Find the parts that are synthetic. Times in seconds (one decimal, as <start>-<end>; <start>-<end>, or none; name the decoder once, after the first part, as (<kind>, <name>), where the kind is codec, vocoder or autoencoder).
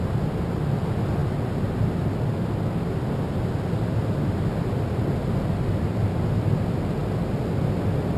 none